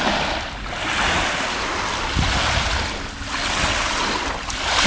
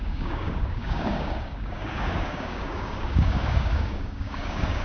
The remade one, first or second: second